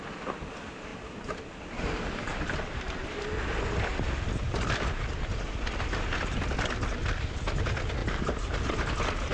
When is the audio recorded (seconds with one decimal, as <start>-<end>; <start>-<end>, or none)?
0.0-0.9; 1.6-2.3; 3.0-8.0; 8.6-9.3